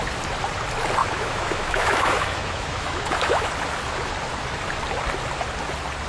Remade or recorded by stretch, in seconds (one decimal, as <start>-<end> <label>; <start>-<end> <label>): 0.0-1.0 recorded; 1.0-3.5 remade; 3.5-6.1 recorded